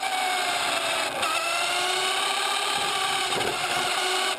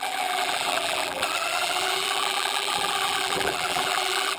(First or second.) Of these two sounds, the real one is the first